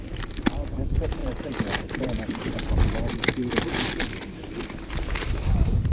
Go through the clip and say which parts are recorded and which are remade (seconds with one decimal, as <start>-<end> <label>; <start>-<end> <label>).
0.0-1.2 recorded; 1.2-3.1 remade; 3.1-5.9 recorded